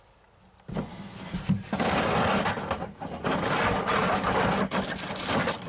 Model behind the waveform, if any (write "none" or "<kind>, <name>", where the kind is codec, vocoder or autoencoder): none